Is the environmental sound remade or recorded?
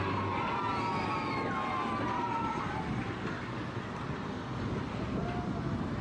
recorded